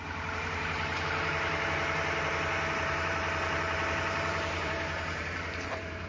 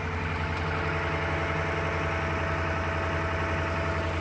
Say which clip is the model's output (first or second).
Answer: first